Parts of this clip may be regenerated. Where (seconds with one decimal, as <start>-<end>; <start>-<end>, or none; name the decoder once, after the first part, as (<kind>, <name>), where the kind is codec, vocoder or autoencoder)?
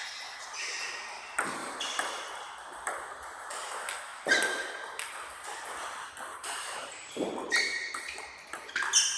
1.6-3.5 (vocoder, BigVGAN v2); 4.1-4.7; 6.3-8.2